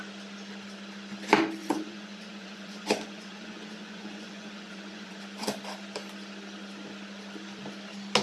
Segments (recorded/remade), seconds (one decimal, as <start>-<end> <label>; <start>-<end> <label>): 0.0-1.6 recorded; 1.6-5.2 remade; 5.2-8.2 recorded